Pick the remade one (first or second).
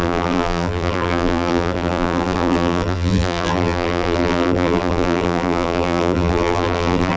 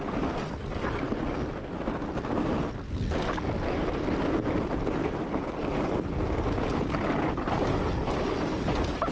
first